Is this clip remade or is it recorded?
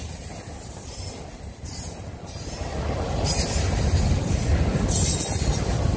recorded